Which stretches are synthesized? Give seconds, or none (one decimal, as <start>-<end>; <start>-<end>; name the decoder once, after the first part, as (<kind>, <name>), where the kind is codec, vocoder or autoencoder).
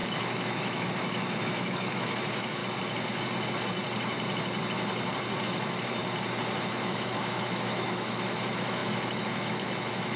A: 0.0-2.6 (autoencoder, DAC-VAE); 5.4-6.0; 6.6-10.2